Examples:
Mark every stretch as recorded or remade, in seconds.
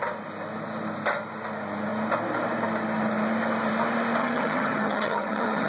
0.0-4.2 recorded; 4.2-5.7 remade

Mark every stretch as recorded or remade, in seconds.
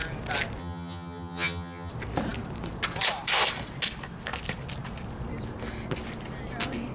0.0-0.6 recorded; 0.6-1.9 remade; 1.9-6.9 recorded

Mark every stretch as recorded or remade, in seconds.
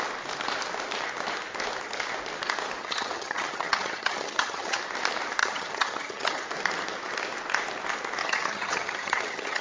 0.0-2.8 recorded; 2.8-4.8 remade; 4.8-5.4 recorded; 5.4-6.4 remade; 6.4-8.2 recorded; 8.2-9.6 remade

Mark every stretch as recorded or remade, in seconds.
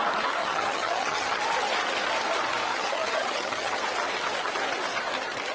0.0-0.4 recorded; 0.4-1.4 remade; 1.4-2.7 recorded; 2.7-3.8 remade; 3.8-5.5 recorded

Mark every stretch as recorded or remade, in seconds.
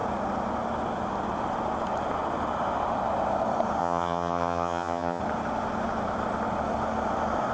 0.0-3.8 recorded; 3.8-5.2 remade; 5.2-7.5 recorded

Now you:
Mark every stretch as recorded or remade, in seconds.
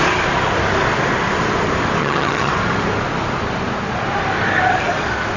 0.0-2.0 recorded; 2.0-2.5 remade; 2.5-5.4 recorded